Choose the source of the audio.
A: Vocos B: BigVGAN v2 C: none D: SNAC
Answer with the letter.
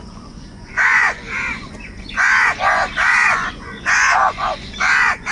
A